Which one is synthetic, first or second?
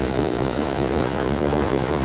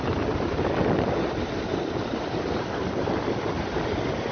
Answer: first